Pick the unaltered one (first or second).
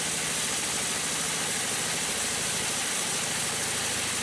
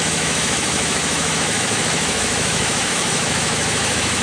first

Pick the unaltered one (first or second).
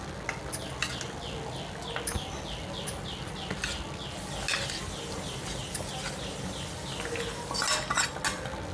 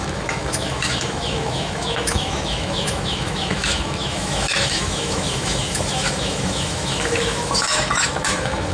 first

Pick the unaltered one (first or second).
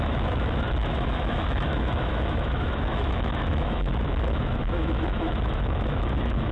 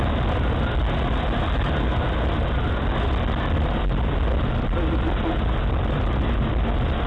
second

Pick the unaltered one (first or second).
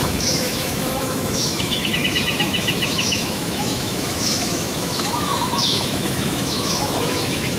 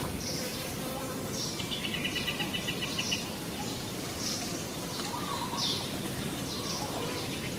second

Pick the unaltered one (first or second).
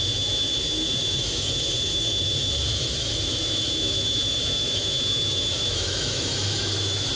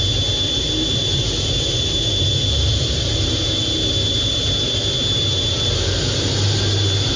second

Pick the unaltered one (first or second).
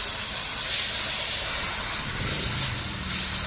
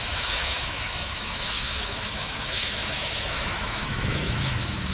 first